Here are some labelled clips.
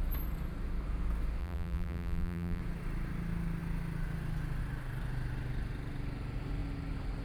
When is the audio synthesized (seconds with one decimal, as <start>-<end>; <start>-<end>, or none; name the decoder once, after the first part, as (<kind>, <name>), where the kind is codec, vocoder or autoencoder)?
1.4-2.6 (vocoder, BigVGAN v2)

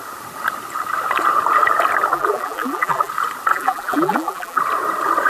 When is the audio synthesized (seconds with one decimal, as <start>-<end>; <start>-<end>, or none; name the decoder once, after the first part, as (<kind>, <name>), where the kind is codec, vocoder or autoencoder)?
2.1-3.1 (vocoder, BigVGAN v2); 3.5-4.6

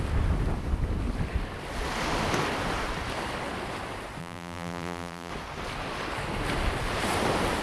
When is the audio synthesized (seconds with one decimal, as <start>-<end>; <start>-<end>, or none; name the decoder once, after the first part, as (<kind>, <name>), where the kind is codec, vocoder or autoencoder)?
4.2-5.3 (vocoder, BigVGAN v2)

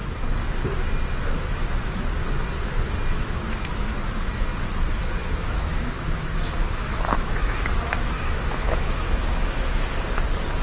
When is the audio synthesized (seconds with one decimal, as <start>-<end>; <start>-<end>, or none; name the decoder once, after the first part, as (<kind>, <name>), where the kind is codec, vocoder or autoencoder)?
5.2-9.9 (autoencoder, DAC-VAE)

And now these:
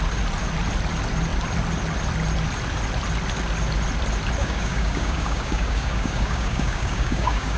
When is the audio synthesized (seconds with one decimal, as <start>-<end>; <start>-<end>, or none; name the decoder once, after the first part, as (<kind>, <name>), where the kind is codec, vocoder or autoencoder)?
4.4-7.6 (codec, DAC)